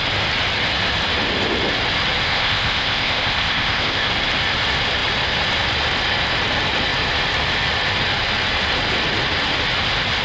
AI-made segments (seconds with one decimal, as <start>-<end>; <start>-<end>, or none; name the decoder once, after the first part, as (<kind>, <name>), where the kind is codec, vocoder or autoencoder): 2.3-4.1 (codec, ZipCodec)